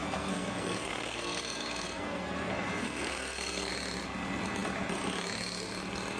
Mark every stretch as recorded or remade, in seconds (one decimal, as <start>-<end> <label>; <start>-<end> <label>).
0.0-3.7 remade; 3.7-6.2 recorded